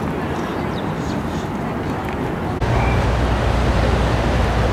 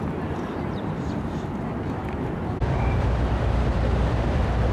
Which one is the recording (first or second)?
first